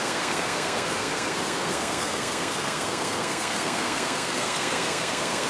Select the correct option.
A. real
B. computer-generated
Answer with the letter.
B